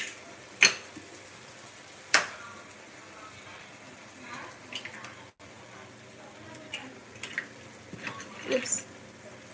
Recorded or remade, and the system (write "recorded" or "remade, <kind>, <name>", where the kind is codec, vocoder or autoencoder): recorded